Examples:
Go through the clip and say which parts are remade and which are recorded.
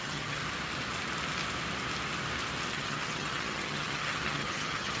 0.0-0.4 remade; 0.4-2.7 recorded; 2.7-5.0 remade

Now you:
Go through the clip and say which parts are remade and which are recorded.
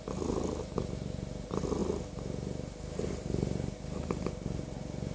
0.0-5.1 recorded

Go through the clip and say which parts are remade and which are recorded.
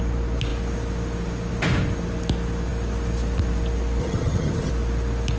0.0-4.0 recorded; 4.0-4.7 remade; 4.7-5.4 recorded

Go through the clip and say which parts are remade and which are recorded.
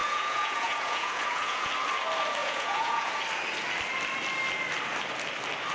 0.0-1.7 remade; 1.7-2.4 recorded; 2.4-3.1 remade; 3.1-5.7 recorded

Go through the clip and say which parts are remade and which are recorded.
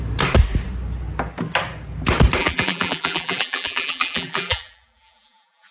0.0-2.4 recorded; 2.4-5.7 remade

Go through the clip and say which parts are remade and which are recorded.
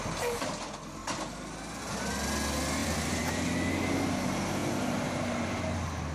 0.0-1.0 recorded; 1.0-1.8 remade; 1.8-2.8 recorded; 2.8-3.7 remade; 3.7-4.6 recorded; 4.6-5.6 remade; 5.6-6.1 recorded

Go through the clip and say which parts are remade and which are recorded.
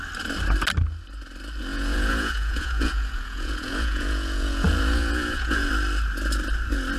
0.0-1.7 recorded; 1.7-5.7 remade; 5.7-7.0 recorded